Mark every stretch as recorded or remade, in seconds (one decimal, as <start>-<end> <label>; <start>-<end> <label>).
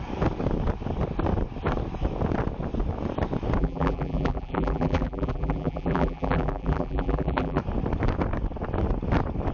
0.0-3.6 recorded; 3.6-7.6 remade; 7.6-9.5 recorded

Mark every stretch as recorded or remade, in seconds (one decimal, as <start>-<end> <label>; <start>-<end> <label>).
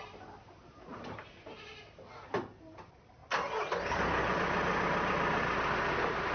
0.0-0.9 recorded; 0.9-2.0 remade; 2.0-3.2 recorded; 3.2-5.8 remade; 5.8-6.3 recorded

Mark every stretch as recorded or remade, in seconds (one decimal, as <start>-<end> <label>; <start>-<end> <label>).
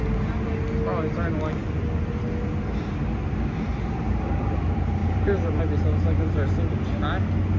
0.0-3.7 recorded; 3.7-4.4 remade; 4.4-5.0 recorded; 5.0-5.6 remade; 5.6-7.6 recorded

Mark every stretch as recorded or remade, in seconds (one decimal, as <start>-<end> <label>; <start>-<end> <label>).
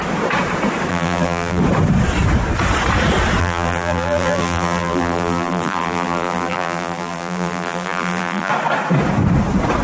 0.0-0.9 recorded; 0.9-1.6 remade; 1.6-3.4 recorded; 3.4-8.5 remade; 8.5-9.8 recorded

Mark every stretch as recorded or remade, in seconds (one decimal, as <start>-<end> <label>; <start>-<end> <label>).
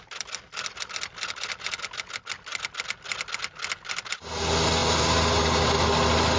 0.0-6.4 recorded